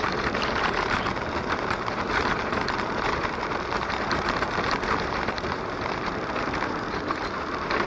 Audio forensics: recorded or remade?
remade